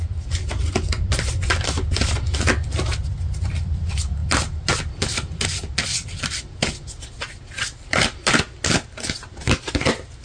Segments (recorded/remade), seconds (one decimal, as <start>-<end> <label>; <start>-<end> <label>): 0.0-10.2 recorded